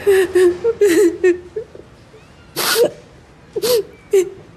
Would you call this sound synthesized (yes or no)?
no